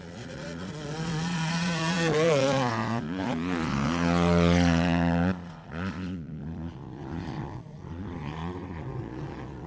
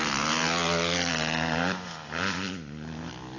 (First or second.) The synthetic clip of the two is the first